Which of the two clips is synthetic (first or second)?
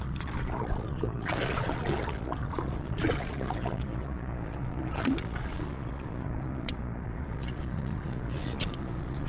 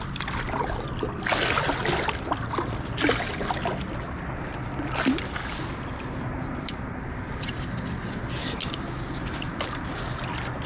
first